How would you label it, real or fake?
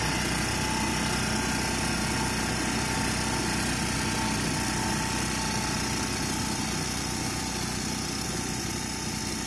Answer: real